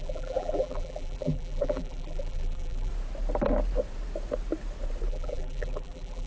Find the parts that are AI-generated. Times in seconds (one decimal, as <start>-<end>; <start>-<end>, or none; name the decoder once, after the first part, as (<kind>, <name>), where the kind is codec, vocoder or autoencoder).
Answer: 0.0-2.9 (vocoder, BigVGAN v2); 5.1-6.3